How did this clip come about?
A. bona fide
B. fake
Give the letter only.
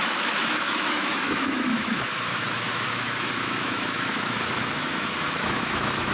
B